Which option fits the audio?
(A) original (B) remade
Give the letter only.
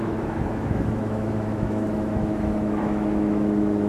B